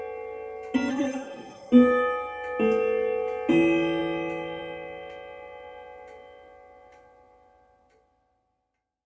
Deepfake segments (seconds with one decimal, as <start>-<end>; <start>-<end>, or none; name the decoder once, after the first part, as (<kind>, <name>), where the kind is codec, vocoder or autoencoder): 0.9-1.7 (codec, SNAC)